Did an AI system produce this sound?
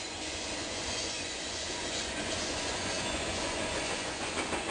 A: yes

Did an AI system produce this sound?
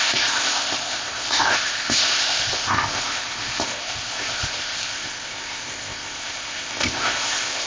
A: yes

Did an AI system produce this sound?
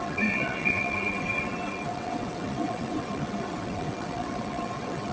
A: yes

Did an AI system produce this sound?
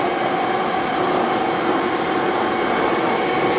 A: no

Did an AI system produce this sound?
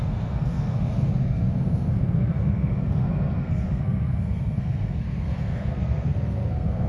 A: yes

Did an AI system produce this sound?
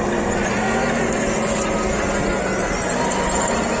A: no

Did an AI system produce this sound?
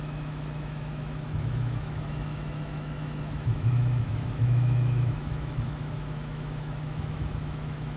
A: yes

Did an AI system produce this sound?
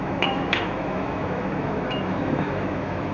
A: yes